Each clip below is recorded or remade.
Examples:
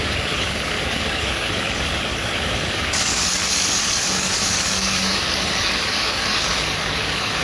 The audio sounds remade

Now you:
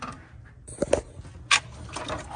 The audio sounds recorded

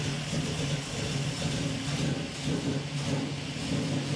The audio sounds recorded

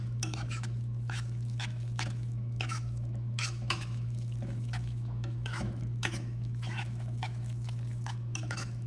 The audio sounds remade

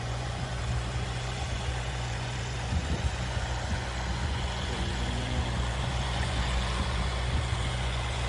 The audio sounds remade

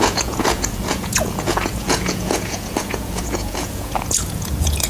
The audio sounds remade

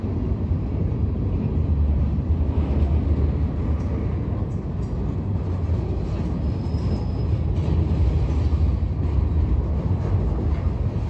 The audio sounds recorded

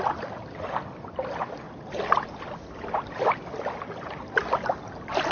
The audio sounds recorded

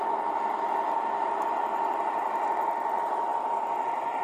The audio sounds remade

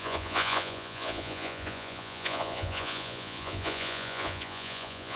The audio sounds remade